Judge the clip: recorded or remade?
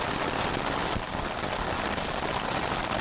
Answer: recorded